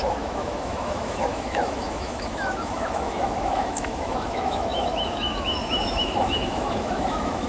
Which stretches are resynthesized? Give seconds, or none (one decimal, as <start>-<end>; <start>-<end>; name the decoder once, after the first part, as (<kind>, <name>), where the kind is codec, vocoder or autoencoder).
0.0-7.5 (autoencoder, DAC-VAE)